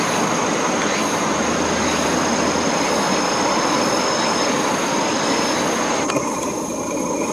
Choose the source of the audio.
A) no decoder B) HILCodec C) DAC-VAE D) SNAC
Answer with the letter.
A